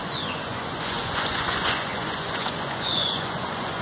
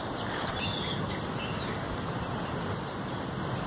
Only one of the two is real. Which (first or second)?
second